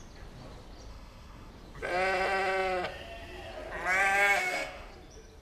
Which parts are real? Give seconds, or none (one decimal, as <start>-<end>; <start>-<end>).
0.0-0.9; 1.5-4.4; 4.9-5.4